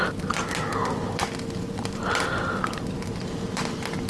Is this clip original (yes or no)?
yes